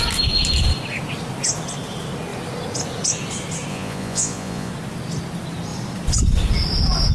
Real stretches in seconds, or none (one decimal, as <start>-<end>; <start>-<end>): 0.0-3.7; 4.7-7.1